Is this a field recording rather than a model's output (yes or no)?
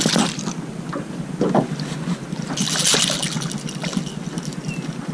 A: yes